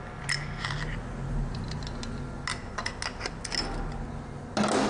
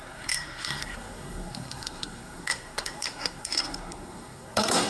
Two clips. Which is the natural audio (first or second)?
first